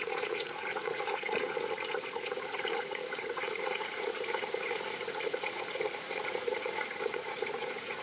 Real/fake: fake